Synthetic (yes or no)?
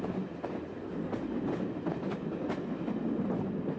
no